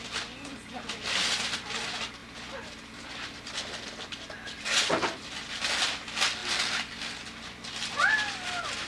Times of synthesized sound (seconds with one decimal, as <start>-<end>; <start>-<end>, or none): none

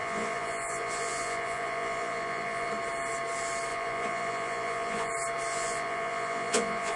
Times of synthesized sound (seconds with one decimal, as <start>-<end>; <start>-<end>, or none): 0.0-2.7; 3.7-5.1; 5.5-7.0

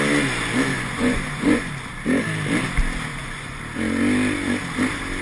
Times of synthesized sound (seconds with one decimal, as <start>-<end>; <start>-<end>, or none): 0.7-1.7; 3.1-3.6

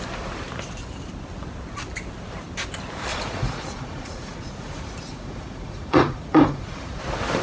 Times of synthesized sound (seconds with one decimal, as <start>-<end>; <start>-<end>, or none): 3.1-7.0

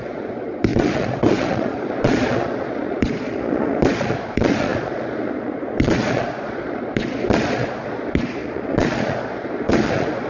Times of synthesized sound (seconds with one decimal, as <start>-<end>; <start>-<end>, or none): 0.0-10.3

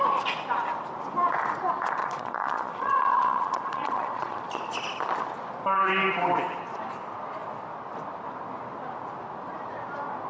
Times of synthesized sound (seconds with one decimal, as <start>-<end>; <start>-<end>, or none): 2.0-4.6

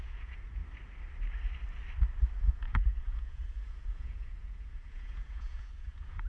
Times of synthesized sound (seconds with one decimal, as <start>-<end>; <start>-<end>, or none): 0.0-0.6; 2.5-6.3

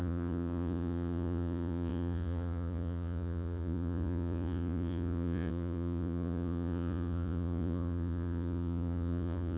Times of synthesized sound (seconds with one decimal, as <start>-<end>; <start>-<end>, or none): 0.0-9.6